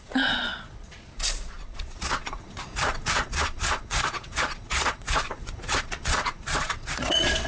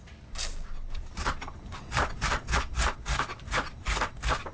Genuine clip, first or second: second